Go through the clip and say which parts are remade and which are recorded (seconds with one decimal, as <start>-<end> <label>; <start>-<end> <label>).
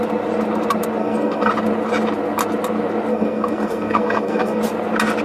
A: 0.0-1.0 recorded; 1.0-1.5 remade; 1.5-3.1 recorded; 3.1-4.6 remade; 4.6-5.2 recorded